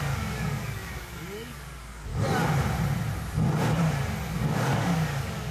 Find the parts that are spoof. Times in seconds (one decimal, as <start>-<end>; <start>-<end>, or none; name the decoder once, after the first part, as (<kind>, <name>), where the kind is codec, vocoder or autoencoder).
0.0-2.1 (codec, DAC); 4.3-5.5